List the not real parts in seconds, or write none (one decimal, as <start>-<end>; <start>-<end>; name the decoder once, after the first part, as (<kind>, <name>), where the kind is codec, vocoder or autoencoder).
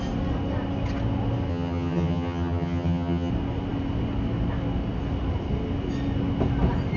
1.5-3.3 (vocoder, HiFi-GAN)